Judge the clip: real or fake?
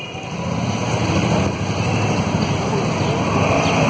real